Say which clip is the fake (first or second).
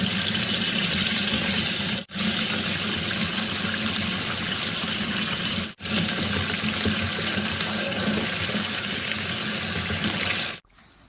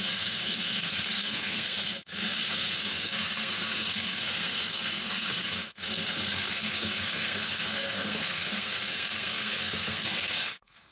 second